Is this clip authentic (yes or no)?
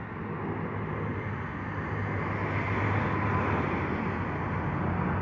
yes